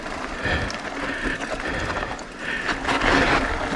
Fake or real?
real